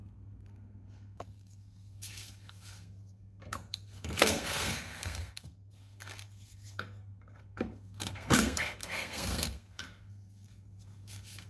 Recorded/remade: remade